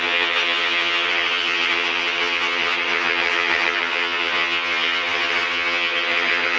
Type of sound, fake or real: fake